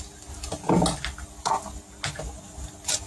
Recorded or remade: recorded